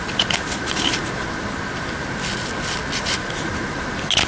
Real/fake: real